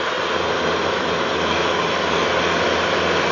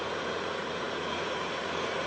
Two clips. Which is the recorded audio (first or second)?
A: first